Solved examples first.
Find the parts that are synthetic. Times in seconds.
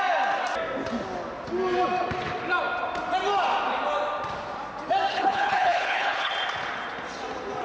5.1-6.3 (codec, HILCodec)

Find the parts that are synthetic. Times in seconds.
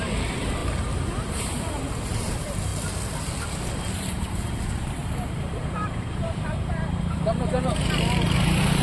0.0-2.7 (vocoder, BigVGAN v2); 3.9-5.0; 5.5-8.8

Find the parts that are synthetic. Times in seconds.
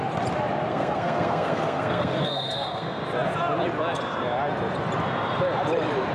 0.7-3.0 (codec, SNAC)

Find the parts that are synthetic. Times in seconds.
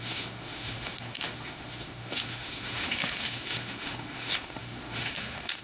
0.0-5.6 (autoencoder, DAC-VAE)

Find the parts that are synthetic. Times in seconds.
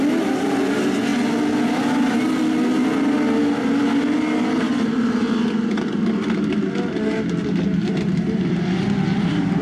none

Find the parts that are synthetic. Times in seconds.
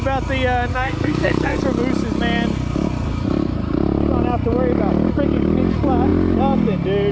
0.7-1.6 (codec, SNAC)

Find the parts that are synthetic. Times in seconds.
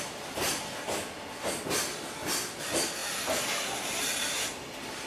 none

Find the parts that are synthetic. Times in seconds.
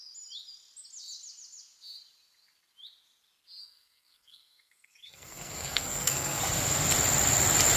3.6-6.4 (codec, SNAC)